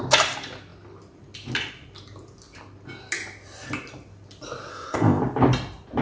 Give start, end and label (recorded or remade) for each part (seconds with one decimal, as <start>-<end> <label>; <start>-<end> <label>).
0.0-4.7 recorded; 4.7-5.2 remade; 5.2-6.0 recorded